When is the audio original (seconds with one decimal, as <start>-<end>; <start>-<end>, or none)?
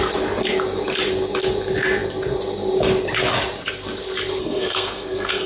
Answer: 0.0-4.4